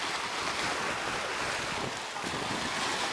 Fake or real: real